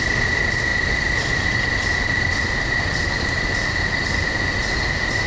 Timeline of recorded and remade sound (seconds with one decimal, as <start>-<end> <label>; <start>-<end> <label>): 0.0-5.3 recorded